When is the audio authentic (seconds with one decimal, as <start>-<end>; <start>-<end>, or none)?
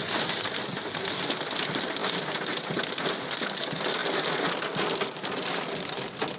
0.0-6.4